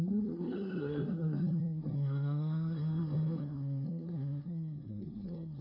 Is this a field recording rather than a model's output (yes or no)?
no